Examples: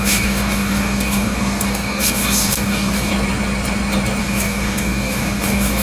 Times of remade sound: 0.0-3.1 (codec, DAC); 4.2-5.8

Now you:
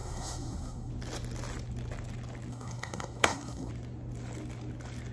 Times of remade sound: 0.0-0.9 (codec, SNAC); 2.5-3.7

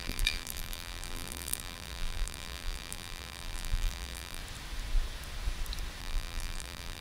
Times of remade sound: 0.0-4.4 (vocoder, BigVGAN v2); 6.0-7.0

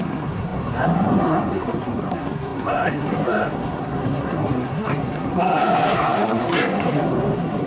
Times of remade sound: 0.0-7.7 (codec, SNAC)

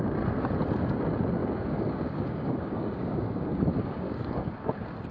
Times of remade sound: 1.4-4.5 (codec, DAC)

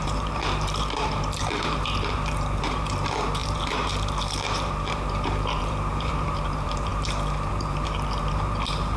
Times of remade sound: 0.0-9.0 (vocoder, BigVGAN v2)

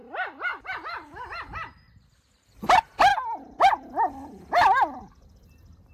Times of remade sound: none